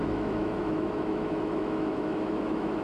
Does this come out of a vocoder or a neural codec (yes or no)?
yes